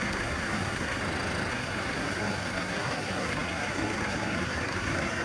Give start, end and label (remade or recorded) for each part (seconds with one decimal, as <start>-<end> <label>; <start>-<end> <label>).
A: 0.0-1.0 remade; 1.0-1.5 recorded; 1.5-5.2 remade